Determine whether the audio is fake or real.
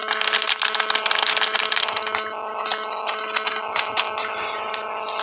real